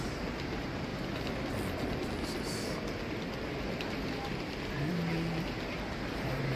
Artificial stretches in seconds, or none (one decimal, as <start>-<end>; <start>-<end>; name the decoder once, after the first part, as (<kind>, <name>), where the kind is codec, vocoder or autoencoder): 0.0-0.9 (vocoder, BigVGAN v2); 4.9-6.6